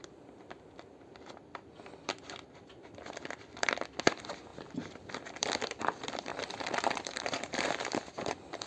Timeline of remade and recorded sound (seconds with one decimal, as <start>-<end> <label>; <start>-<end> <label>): 0.0-4.5 recorded; 4.5-5.1 remade; 5.1-6.3 recorded; 6.3-7.8 remade; 7.8-8.7 recorded